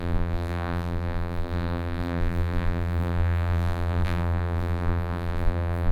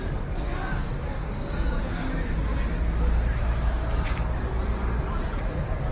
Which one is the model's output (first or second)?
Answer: first